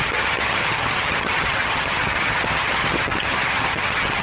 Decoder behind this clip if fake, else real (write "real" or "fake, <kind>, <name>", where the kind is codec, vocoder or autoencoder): fake, vocoder, HiFi-GAN